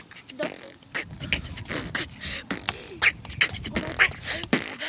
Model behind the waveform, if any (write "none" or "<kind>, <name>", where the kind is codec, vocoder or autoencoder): none